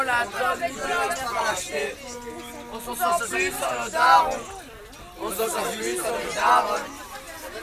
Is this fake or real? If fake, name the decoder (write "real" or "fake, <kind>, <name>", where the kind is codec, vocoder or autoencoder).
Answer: real